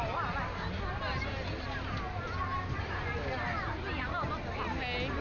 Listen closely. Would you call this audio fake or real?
real